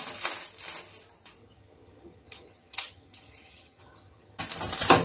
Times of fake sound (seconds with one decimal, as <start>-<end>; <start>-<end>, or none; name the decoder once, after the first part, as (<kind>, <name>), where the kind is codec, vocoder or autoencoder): 1.4-4.4 (vocoder, HiFi-GAN)